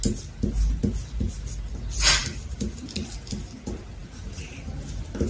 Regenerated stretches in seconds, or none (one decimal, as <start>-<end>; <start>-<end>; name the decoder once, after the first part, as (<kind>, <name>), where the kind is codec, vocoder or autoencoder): 2.2-2.8 (vocoder, BigVGAN v2); 4.0-4.5